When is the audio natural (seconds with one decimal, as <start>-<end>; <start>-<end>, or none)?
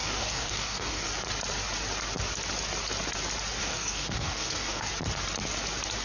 1.1-3.6; 4.9-6.0